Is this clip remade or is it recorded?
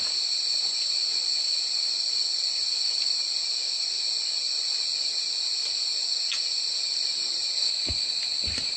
recorded